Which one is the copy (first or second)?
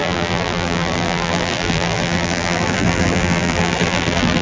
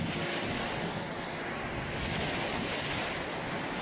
first